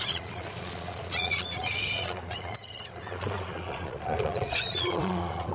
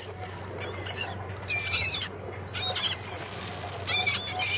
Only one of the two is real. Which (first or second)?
second